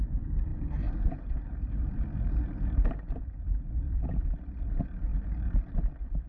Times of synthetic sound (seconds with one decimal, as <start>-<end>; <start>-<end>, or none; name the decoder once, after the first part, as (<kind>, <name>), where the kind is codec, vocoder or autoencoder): 0.5-3.7 (vocoder, BigVGAN v2); 5.1-5.8